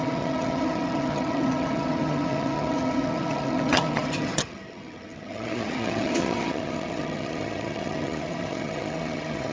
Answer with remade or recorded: remade